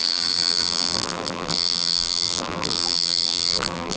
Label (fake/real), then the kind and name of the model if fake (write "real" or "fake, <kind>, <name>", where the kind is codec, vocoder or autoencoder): fake, vocoder, BigVGAN v2